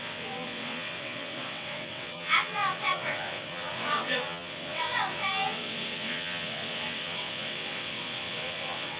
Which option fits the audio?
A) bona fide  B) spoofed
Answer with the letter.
B